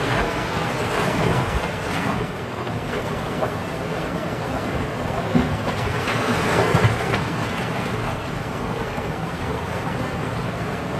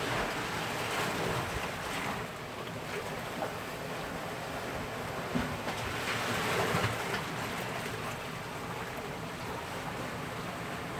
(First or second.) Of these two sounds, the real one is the second